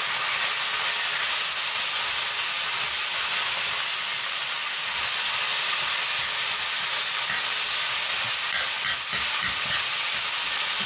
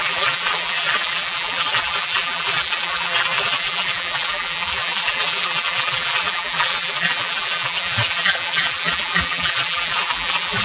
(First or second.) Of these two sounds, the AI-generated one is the second